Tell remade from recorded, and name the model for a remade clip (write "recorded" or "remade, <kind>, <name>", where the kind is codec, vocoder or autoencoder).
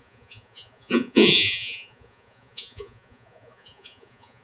remade, vocoder, Vocos